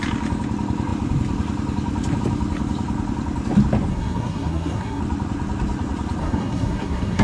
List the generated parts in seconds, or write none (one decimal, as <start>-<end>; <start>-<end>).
3.9-5.0; 6.2-7.2